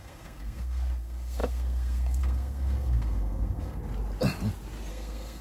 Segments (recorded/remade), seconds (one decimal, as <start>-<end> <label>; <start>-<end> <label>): 0.0-3.8 remade; 3.8-4.9 recorded; 4.9-5.4 remade